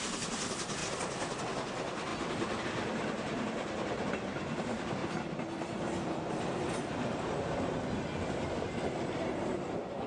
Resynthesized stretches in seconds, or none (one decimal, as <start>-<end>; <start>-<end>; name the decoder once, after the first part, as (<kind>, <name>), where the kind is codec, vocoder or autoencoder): none